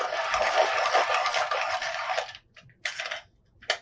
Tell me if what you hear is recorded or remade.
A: recorded